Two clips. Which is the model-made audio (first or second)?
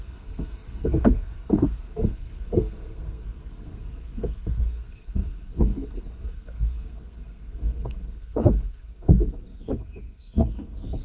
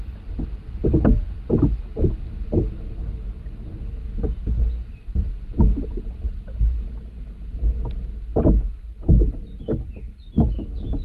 first